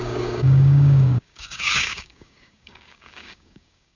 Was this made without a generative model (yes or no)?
no